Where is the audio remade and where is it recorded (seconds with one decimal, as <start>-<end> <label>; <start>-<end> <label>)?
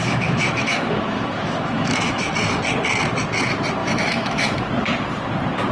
0.0-2.3 remade; 2.3-3.8 recorded; 3.8-4.7 remade; 4.7-5.7 recorded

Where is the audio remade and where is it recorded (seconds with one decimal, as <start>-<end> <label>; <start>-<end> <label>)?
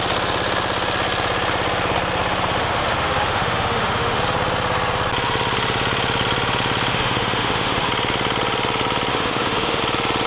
0.0-2.6 recorded; 2.6-4.2 remade; 4.2-6.9 recorded; 6.9-7.9 remade; 7.9-9.1 recorded; 9.1-9.8 remade; 9.8-10.3 recorded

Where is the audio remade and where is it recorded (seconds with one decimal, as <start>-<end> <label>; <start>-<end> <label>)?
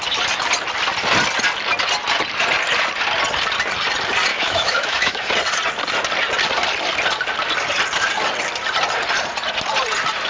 0.0-4.3 recorded; 4.3-5.3 remade; 5.3-10.3 recorded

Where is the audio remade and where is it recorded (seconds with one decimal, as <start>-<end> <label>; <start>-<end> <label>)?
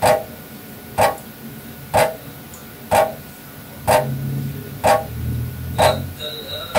0.0-6.8 recorded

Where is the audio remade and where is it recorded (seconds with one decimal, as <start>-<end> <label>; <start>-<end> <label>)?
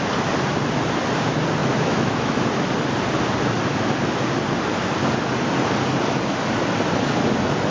0.0-1.6 recorded; 1.6-2.5 remade; 2.5-7.7 recorded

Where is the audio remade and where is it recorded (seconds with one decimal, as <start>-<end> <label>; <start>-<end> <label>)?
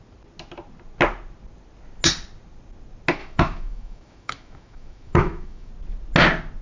0.0-3.2 recorded; 3.2-5.7 remade; 5.7-6.6 recorded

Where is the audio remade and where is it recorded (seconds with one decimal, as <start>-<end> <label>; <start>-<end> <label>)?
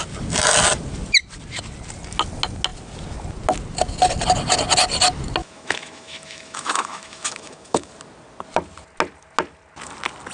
0.0-5.4 recorded; 5.4-7.9 remade; 7.9-10.3 recorded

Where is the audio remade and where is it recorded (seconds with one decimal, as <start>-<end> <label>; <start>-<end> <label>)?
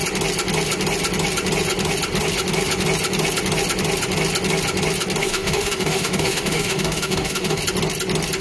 0.0-5.2 recorded; 5.2-7.6 remade; 7.6-8.4 recorded